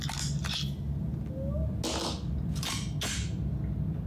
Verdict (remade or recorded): recorded